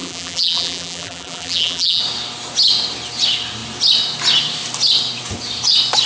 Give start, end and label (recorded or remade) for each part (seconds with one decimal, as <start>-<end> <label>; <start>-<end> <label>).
0.0-2.0 remade; 2.0-6.1 recorded